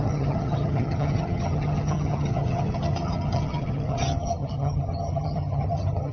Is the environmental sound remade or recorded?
remade